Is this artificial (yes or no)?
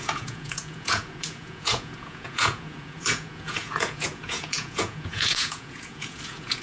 yes